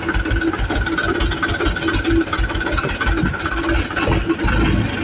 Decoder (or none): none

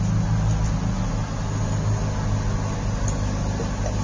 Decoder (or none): none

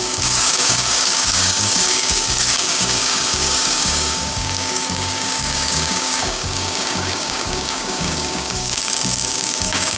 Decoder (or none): codec, DAC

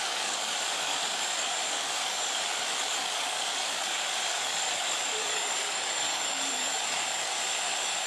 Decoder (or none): codec, DAC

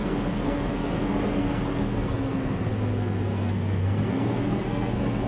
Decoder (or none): codec, SNAC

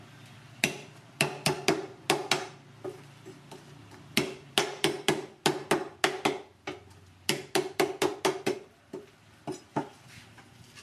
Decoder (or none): none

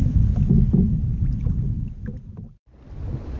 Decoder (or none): none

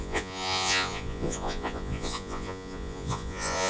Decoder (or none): vocoder, Vocos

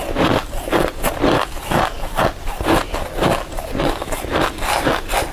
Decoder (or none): none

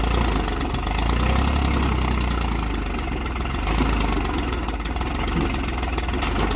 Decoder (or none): none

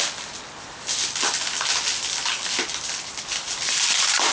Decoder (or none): none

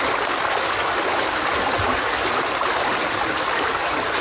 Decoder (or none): none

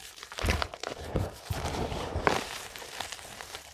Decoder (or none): vocoder, BigVGAN v2